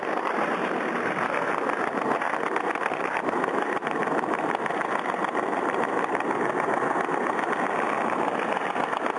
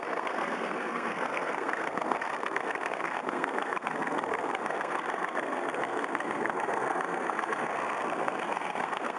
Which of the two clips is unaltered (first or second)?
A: first